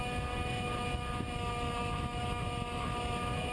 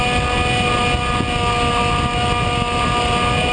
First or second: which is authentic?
second